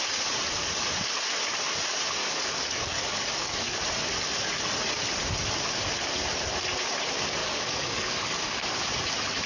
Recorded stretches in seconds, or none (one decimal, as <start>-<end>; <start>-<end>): 0.0-2.2; 3.8-7.4; 8.8-9.5